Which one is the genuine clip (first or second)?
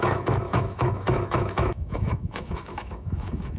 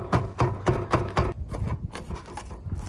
second